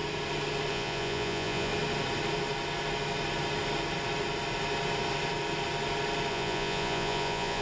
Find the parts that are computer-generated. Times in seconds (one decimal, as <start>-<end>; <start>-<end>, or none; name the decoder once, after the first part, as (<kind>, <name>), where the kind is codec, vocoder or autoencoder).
0.7-1.7 (vocoder, Vocos); 6.3-7.6